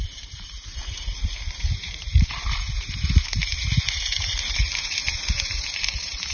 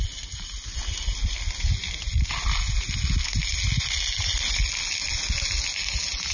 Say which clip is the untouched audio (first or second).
second